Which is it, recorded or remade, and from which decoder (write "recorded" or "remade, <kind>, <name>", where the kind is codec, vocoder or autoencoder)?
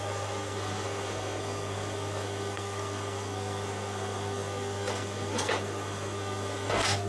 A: remade, codec, SNAC